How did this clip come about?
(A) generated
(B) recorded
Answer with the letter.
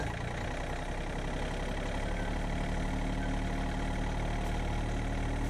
B